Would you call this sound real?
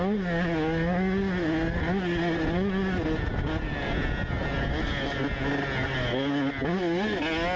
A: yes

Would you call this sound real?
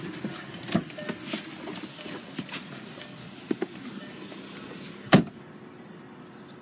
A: yes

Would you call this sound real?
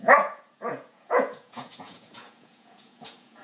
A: no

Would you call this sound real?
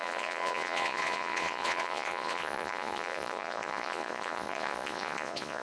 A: no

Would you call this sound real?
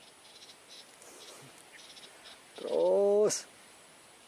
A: yes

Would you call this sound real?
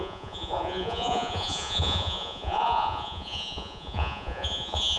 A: no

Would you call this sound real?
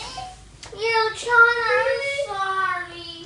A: yes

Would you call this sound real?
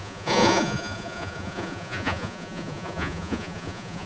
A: no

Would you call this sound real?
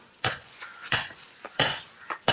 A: no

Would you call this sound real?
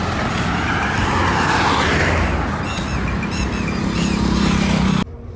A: yes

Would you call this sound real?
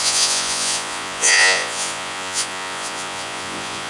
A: no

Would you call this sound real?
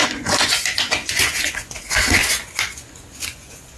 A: no